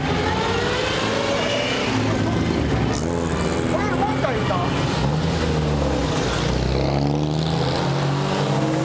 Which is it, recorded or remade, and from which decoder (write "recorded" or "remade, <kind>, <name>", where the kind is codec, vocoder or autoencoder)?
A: recorded